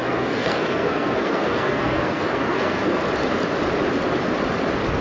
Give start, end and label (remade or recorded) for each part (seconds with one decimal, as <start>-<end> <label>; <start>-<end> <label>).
0.0-3.0 remade; 3.0-5.0 recorded